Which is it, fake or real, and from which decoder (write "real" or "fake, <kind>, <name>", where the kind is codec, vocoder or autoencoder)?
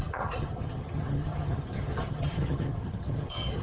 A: fake, vocoder, HiFi-GAN